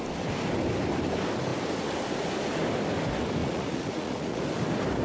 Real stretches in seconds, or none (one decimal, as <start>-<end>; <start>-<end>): 0.0-3.4; 4.4-5.0